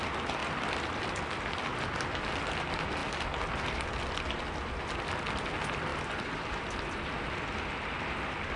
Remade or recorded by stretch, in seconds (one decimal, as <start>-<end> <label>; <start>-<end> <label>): 0.0-0.4 recorded; 0.4-1.0 remade; 1.0-5.9 recorded; 5.9-7.7 remade; 7.7-8.6 recorded